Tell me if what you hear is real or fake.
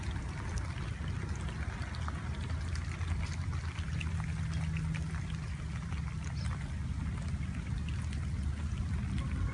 real